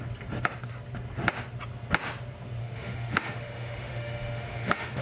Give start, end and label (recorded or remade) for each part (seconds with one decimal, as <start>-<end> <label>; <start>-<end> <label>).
0.0-2.6 recorded; 2.6-5.0 remade